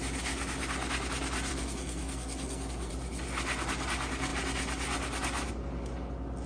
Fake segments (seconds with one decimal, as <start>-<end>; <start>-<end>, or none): 1.5-2.9